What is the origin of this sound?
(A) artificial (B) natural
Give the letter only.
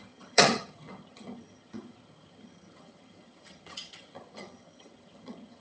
A